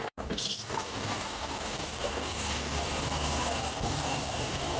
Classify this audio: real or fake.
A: fake